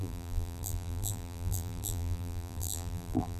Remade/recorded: remade